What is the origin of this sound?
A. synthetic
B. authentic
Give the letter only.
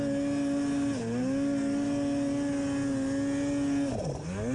B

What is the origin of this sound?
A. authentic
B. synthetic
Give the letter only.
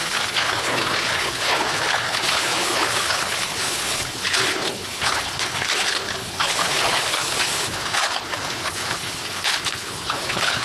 B